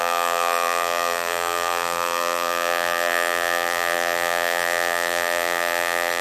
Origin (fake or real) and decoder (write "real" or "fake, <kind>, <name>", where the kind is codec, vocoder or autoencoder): fake, vocoder, BigVGAN v2